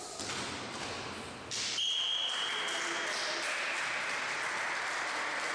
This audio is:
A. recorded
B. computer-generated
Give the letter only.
A